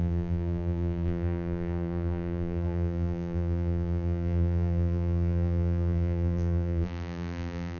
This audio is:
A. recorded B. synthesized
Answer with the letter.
B